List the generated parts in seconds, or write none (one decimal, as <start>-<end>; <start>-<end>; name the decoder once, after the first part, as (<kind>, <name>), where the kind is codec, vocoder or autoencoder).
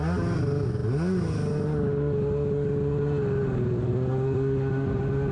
none